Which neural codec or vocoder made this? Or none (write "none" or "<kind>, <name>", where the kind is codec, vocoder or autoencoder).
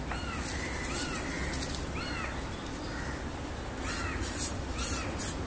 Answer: none